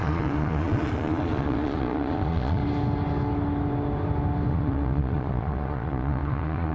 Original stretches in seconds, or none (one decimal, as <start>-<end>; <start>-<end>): 2.6-4.5